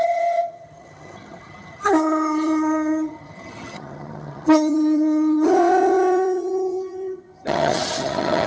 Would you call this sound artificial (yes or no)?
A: yes